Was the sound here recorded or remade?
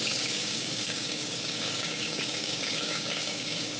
remade